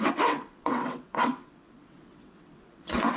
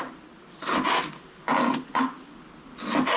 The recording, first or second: second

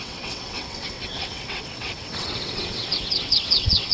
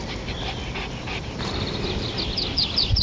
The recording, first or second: second